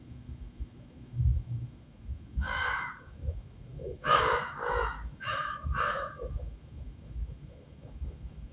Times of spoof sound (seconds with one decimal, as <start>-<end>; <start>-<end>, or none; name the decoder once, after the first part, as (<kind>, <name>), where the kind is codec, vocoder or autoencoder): 0.0-8.5 (autoencoder, DAC-VAE)